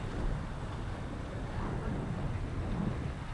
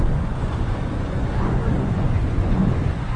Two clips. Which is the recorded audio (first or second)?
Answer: first